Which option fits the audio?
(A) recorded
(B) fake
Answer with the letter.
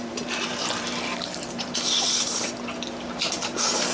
B